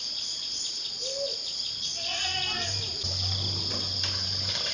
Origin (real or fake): real